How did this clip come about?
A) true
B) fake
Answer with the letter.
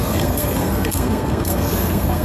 B